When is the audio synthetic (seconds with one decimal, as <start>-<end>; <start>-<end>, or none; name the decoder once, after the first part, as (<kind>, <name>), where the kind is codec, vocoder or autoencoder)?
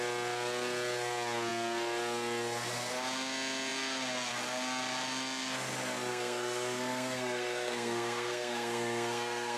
6.1-9.6 (codec, SNAC)